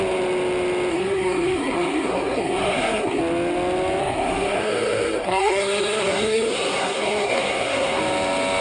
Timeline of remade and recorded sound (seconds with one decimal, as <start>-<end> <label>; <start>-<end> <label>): 0.0-0.9 recorded; 0.9-3.2 remade; 3.2-4.0 recorded; 4.0-8.0 remade; 8.0-8.6 recorded